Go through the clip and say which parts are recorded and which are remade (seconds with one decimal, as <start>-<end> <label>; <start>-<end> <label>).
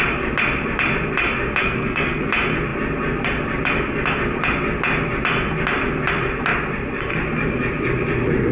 0.0-1.6 recorded; 1.6-2.2 remade; 2.2-8.5 recorded